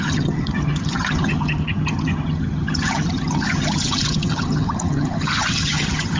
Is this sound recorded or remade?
remade